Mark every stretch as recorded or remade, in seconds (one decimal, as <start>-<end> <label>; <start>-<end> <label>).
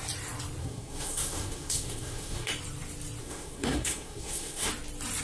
0.0-0.6 recorded; 0.6-2.5 remade; 2.5-3.2 recorded; 3.2-4.7 remade; 4.7-5.2 recorded